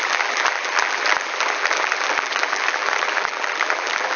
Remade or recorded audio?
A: remade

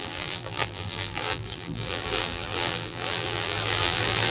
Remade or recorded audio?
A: remade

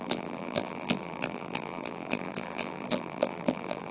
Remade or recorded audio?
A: remade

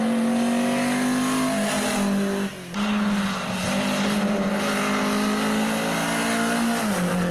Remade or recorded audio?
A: recorded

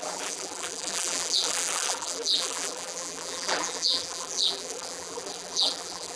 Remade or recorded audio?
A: remade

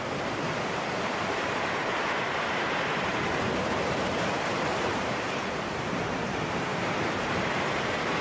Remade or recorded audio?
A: remade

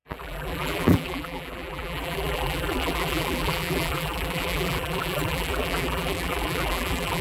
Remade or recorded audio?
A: remade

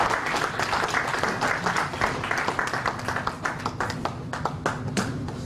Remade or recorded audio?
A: recorded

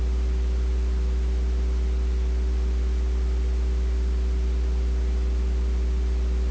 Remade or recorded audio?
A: recorded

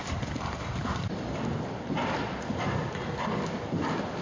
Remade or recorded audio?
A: recorded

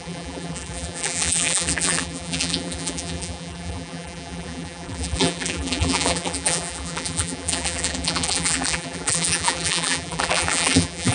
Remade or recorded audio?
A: remade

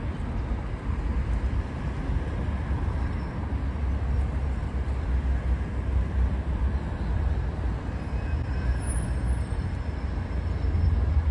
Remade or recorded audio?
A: recorded